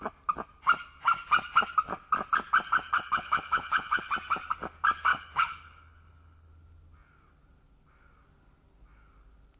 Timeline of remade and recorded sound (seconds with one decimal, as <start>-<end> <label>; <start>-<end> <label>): 0.0-2.9 recorded; 2.9-4.1 remade; 4.1-5.1 recorded; 5.1-6.5 remade; 6.5-9.6 recorded